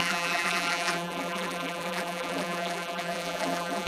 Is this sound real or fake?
fake